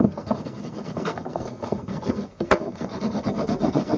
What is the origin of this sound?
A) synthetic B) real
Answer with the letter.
A